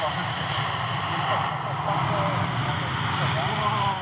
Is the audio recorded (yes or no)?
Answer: yes